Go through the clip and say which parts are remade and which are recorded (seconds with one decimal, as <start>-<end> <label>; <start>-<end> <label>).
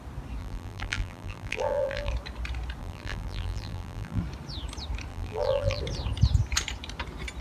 0.0-0.4 recorded; 0.4-2.1 remade; 2.1-2.8 recorded; 2.8-4.2 remade; 4.2-5.1 recorded; 5.1-5.8 remade; 5.8-7.4 recorded